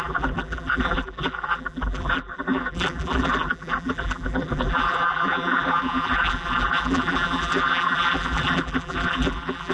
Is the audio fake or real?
fake